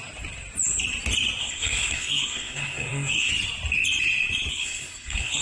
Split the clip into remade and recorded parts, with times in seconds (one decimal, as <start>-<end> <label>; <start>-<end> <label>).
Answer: 0.0-1.4 recorded; 1.4-3.3 remade; 3.3-4.5 recorded; 4.5-5.4 remade